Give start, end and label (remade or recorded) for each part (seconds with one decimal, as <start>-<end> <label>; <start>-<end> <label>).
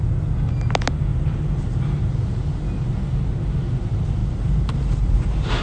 0.0-1.1 recorded; 1.1-2.1 remade; 2.1-4.2 recorded; 4.2-5.6 remade